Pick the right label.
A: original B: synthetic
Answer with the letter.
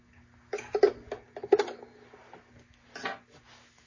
A